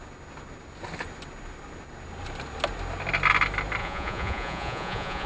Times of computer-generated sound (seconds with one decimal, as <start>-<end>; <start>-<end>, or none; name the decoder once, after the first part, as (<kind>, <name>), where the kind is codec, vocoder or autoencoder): 3.8-5.3 (vocoder, Vocos)